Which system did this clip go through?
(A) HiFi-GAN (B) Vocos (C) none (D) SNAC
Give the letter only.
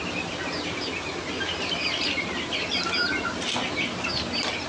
C